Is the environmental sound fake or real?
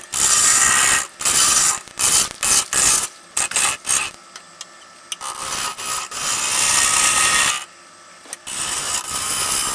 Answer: real